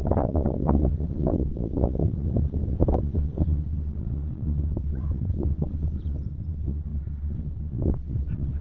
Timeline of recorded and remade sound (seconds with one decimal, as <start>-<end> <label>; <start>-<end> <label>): 0.0-8.6 remade